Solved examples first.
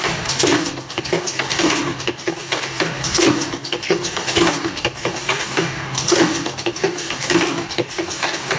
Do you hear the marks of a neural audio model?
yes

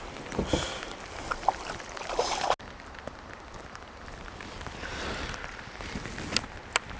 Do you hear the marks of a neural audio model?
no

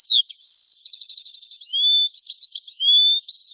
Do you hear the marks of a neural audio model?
yes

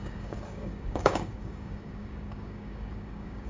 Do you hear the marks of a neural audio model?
yes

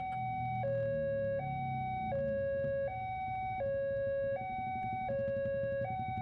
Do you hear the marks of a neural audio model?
no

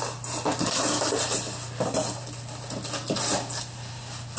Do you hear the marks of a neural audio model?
no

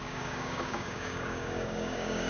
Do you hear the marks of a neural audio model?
yes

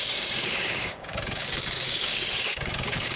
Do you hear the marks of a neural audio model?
yes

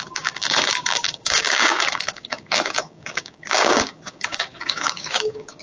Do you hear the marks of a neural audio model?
yes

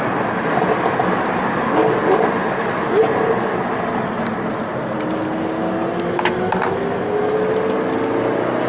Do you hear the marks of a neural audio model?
no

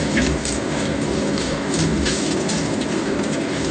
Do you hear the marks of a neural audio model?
yes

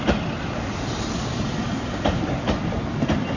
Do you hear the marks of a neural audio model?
no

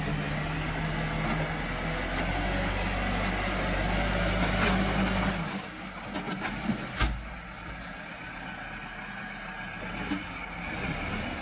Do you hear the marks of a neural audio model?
no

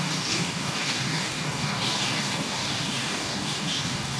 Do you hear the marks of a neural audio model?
yes